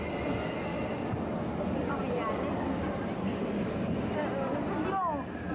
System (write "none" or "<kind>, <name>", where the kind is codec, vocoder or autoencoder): none